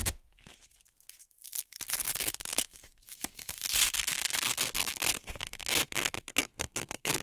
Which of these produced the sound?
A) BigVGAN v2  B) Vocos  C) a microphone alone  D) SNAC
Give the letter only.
D